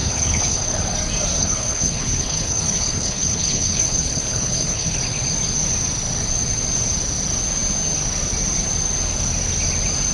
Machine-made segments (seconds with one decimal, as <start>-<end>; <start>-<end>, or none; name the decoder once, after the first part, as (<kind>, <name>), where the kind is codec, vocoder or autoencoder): 0.0-0.9 (codec, HILCodec); 1.4-5.0